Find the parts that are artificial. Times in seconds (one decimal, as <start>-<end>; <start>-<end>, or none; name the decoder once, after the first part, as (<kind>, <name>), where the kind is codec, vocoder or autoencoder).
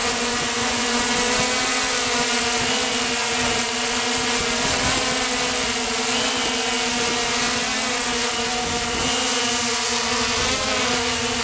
0.0-1.0 (vocoder, Vocos)